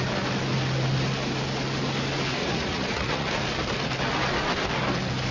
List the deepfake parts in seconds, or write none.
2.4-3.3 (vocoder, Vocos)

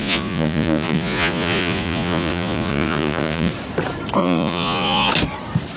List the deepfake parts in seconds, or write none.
0.0-3.5 (vocoder, Vocos); 4.2-5.1

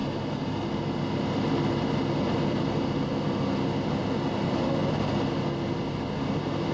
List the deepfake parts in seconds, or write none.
none